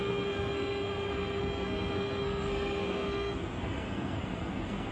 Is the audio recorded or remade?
remade